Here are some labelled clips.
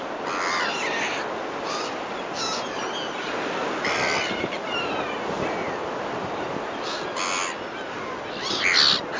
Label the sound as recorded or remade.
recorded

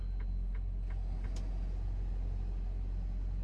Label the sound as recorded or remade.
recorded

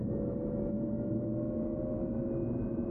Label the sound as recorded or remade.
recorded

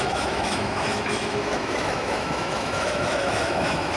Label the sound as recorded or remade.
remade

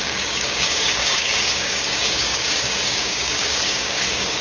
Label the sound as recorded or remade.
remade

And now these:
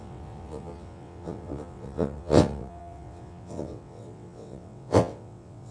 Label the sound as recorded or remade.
remade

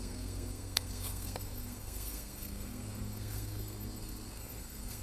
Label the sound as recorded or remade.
remade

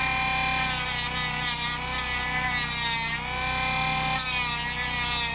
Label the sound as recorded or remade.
recorded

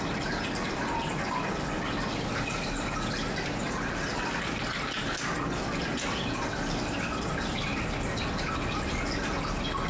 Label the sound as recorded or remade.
recorded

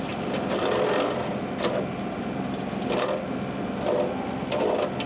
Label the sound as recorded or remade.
recorded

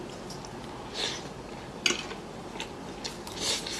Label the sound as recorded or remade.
recorded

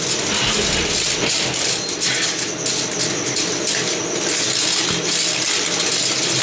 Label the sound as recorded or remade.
recorded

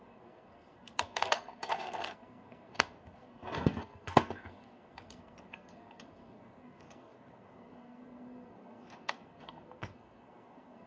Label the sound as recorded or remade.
remade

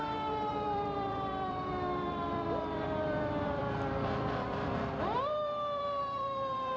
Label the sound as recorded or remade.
remade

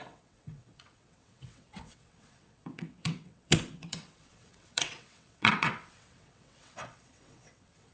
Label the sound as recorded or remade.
remade